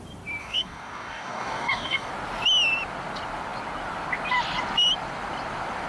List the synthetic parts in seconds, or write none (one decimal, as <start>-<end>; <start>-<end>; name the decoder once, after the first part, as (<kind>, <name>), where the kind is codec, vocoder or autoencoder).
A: 0.4-2.1 (codec, DAC)